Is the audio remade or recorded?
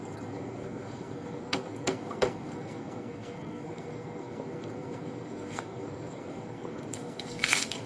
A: remade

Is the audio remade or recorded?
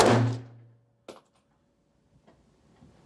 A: recorded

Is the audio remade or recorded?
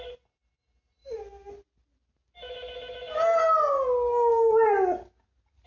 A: recorded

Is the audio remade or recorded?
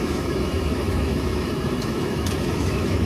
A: remade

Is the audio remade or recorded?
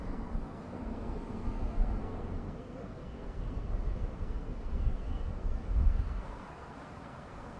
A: remade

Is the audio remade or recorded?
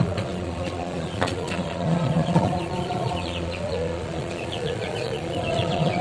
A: remade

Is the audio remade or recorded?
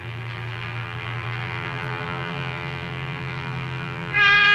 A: remade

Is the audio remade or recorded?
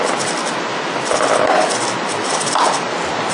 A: recorded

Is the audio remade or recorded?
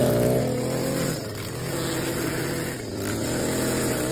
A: recorded